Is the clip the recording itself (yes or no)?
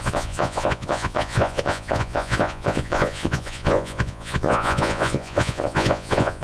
no